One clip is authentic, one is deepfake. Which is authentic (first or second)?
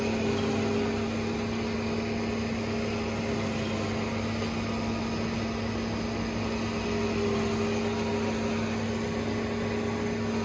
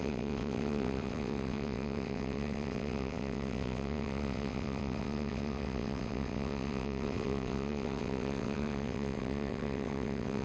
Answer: first